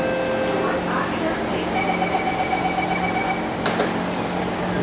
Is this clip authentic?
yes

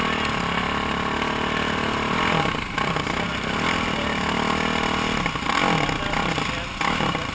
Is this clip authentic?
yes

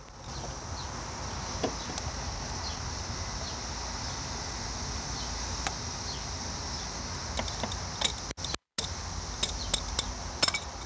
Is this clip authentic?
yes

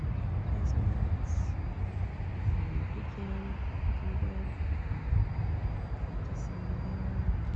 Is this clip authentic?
yes